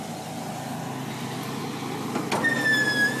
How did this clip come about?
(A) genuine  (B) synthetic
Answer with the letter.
A